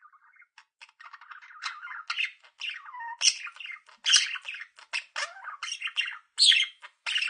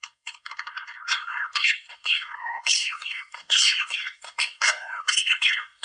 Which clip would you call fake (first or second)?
second